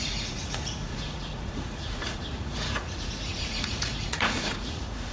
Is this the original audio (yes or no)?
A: no